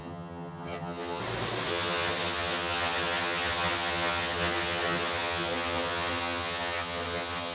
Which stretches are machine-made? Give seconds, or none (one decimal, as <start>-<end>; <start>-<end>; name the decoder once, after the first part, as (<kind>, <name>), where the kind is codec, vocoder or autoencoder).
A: 0.0-1.2 (vocoder, HiFi-GAN); 1.7-7.5